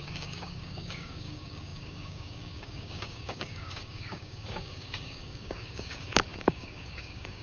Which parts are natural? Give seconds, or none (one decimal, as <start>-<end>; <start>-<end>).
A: none